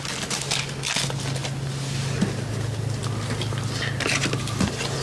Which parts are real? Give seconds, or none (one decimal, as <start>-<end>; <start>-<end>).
0.0-5.0